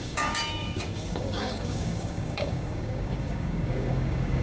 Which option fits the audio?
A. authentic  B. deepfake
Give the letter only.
B